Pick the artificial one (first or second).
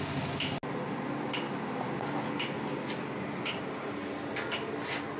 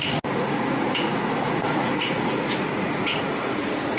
second